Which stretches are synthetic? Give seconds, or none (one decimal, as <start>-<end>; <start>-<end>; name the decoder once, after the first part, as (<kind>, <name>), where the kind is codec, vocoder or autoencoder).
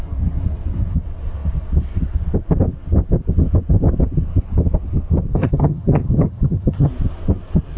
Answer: 5.3-6.9 (vocoder, HiFi-GAN)